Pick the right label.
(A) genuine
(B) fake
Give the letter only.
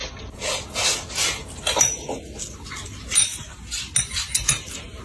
A